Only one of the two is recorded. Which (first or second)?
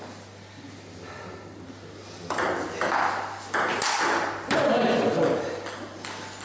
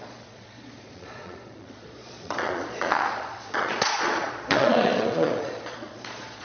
first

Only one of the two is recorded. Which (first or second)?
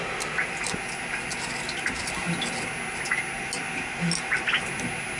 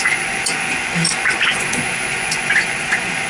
first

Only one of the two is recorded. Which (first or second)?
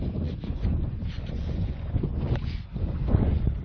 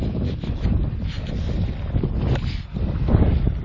second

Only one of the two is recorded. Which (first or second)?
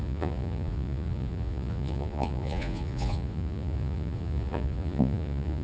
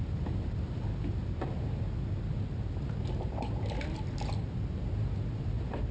second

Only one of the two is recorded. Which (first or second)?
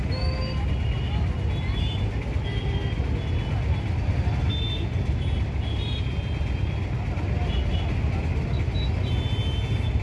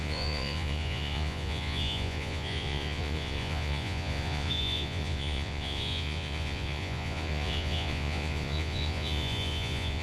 first